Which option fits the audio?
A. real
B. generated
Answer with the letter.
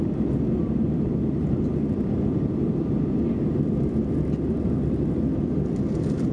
B